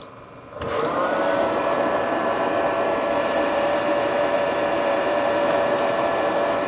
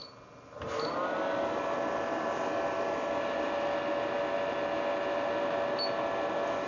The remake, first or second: first